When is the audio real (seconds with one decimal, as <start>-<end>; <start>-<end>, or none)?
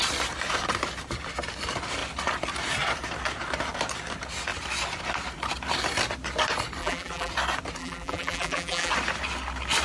0.0-6.8; 7.3-7.8; 8.9-9.8